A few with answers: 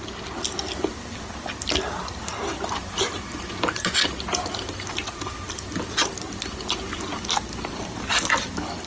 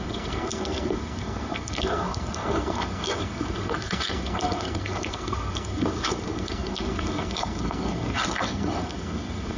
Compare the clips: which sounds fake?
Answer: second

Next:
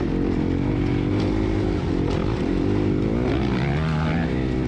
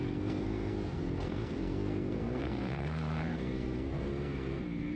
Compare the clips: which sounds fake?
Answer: second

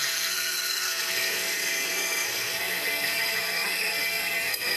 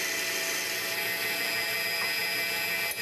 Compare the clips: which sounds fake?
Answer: first